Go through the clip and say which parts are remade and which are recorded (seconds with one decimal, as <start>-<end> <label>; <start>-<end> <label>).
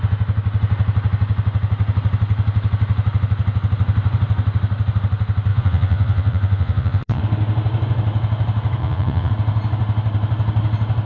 0.0-5.5 recorded; 5.5-7.2 remade; 7.2-8.8 recorded; 8.8-9.3 remade; 9.3-11.1 recorded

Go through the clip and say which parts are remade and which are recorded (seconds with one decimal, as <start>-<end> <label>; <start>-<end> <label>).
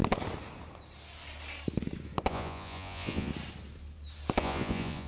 0.0-2.3 recorded; 2.3-3.3 remade; 3.3-4.4 recorded; 4.4-5.1 remade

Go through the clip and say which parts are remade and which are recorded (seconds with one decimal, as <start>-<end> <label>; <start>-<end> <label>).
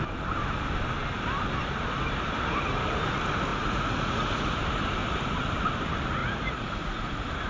0.0-3.5 recorded; 3.5-4.6 remade; 4.6-6.2 recorded; 6.2-7.0 remade; 7.0-7.5 recorded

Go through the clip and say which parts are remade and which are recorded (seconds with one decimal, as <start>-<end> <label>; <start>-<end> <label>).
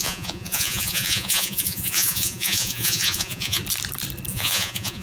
0.0-3.6 remade; 3.6-4.3 recorded; 4.3-5.0 remade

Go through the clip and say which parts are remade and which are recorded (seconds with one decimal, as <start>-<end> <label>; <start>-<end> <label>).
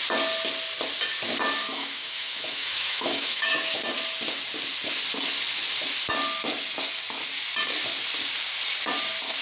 0.0-1.6 recorded; 1.6-3.8 remade; 3.8-9.4 recorded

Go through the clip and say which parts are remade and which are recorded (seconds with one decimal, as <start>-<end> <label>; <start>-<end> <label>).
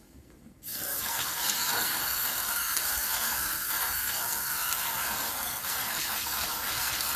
0.0-7.2 remade